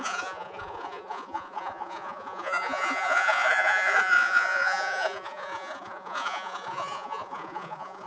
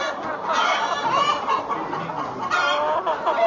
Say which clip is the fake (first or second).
first